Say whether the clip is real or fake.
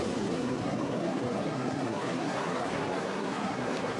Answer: fake